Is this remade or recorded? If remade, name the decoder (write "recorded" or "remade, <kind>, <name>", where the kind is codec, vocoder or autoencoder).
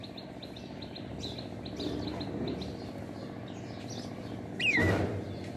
recorded